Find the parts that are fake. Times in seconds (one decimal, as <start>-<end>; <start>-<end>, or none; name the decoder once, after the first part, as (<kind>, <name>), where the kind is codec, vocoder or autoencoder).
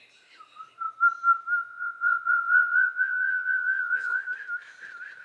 1.7-4.2 (vocoder, Vocos)